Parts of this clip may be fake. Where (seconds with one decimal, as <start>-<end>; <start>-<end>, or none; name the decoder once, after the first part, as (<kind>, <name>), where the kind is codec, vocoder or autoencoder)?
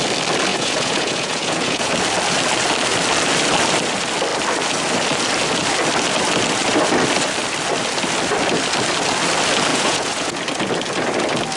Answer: 0.5-1.9 (vocoder, Vocos); 9.7-10.4